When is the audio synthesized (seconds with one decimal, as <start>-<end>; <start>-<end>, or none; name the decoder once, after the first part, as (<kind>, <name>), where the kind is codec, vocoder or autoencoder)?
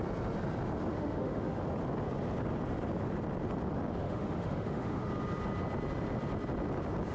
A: 0.9-1.6 (autoencoder, DAC-VAE); 4.0-5.1